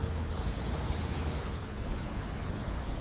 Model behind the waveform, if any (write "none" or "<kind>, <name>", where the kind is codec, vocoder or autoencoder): codec, HILCodec